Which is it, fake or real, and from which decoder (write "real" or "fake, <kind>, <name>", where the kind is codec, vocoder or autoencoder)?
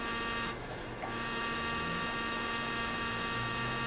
fake, autoencoder, DAC-VAE